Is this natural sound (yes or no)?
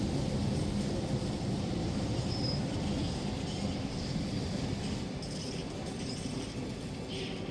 yes